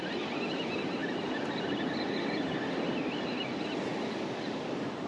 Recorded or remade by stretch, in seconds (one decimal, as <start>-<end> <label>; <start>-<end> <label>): 0.0-5.1 recorded